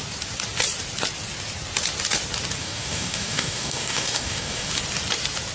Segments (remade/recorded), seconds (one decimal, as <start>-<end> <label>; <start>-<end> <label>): 0.0-2.6 recorded; 2.6-4.7 remade; 4.7-5.5 recorded